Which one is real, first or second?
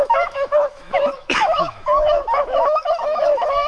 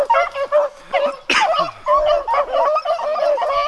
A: second